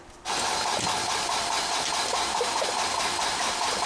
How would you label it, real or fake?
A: real